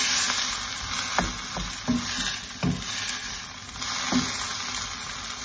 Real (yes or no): yes